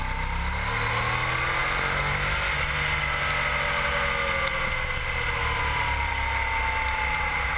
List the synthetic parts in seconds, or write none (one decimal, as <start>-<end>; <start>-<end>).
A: none